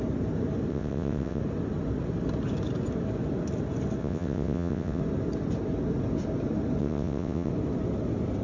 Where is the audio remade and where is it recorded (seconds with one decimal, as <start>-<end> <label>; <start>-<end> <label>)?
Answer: 0.0-0.7 recorded; 0.7-1.4 remade; 1.4-4.0 recorded; 4.0-5.0 remade; 5.0-6.8 recorded; 6.8-7.5 remade; 7.5-8.4 recorded